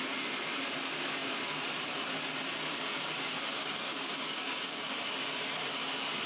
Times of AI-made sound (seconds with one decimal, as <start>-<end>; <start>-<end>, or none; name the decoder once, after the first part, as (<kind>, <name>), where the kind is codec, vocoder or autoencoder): 3.5-4.9 (codec, DAC)